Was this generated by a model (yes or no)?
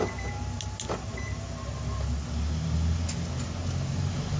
no